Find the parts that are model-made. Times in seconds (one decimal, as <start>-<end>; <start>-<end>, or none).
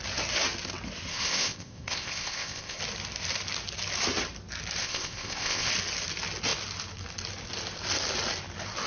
1.1-2.8; 4.8-5.7